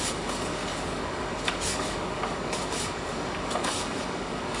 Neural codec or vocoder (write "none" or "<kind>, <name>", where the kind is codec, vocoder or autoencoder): codec, DAC